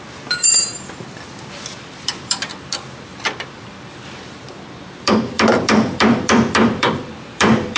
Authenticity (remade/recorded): remade